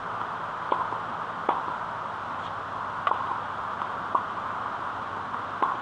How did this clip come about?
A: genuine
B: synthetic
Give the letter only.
A